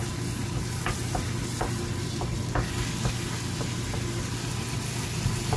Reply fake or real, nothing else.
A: real